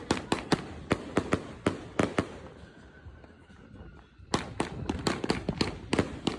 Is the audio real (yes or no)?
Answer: yes